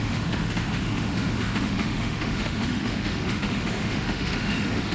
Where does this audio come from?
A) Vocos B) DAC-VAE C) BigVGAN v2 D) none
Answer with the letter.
B